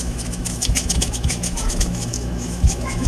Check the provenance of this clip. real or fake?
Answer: fake